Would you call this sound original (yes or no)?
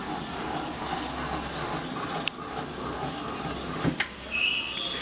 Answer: yes